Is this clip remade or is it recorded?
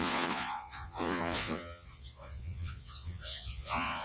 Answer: remade